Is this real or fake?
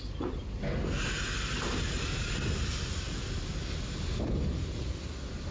real